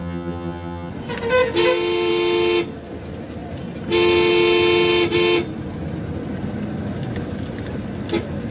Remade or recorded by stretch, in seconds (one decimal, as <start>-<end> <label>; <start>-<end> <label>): 0.0-0.9 remade; 0.9-8.5 recorded